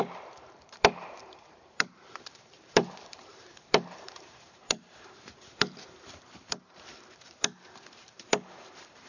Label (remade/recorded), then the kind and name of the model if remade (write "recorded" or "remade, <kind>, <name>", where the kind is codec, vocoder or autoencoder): remade, vocoder, BigVGAN v2